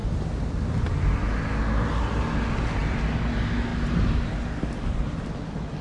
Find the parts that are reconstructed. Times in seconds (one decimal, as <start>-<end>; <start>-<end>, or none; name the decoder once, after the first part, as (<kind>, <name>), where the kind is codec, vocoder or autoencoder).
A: none